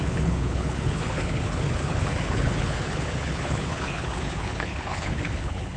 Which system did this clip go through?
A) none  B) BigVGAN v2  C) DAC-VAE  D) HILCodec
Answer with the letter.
D